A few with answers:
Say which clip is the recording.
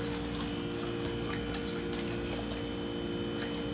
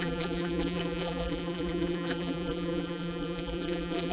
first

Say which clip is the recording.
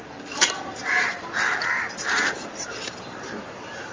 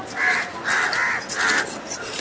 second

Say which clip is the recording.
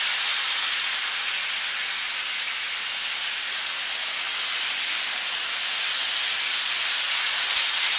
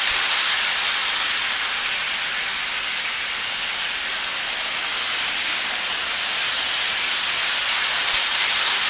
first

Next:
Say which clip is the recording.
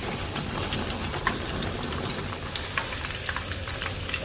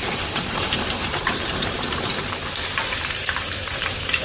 first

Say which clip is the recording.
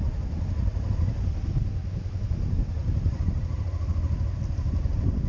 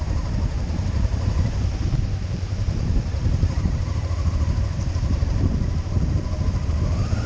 first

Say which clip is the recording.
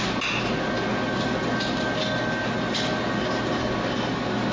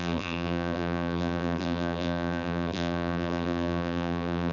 first